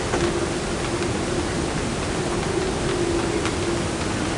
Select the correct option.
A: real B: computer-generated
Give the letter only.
A